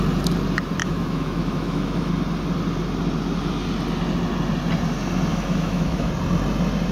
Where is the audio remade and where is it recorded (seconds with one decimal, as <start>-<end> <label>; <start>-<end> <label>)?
0.0-0.8 recorded; 0.8-2.1 remade; 2.1-5.3 recorded; 5.3-6.1 remade; 6.1-6.9 recorded